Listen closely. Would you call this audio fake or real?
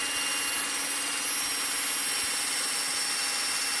real